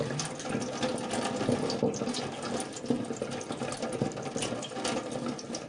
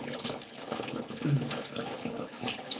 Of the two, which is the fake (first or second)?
second